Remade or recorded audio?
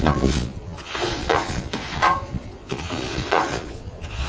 remade